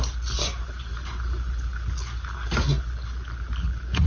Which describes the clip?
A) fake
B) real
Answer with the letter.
B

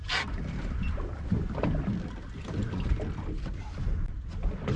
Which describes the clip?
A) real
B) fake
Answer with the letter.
A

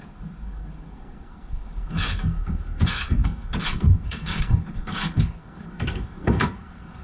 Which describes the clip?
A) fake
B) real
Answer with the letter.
A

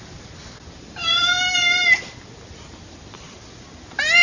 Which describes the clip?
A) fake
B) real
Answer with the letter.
B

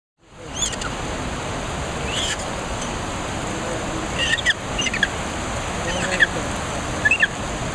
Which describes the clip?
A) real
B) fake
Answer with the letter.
A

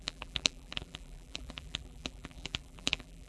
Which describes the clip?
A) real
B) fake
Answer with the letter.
B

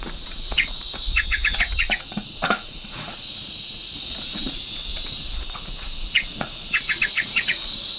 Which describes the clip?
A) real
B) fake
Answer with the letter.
B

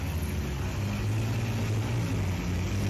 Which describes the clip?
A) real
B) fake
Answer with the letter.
A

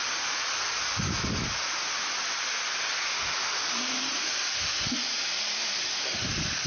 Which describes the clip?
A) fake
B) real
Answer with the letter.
B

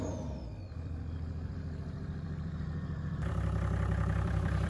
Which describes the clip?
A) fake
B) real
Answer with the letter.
A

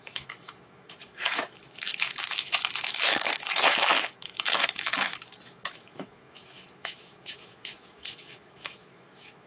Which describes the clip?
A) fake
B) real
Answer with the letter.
A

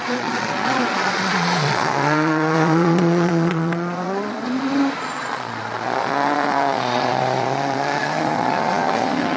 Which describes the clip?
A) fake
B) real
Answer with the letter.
A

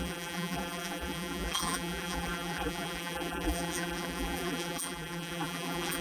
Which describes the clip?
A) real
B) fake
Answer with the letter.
B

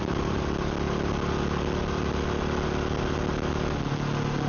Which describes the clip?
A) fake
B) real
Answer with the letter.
B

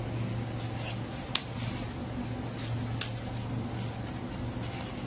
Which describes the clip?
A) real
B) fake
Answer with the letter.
A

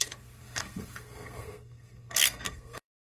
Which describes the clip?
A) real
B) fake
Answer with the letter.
B